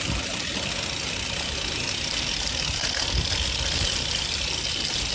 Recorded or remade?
recorded